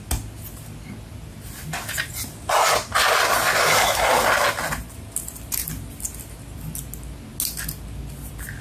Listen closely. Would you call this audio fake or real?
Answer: real